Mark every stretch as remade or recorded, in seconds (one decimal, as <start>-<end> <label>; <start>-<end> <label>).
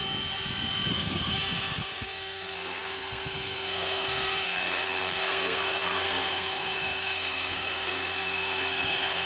0.0-0.9 recorded; 0.9-9.3 remade